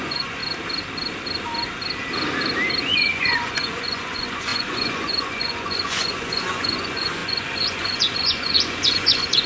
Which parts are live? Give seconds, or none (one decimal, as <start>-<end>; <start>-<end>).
0.4-2.8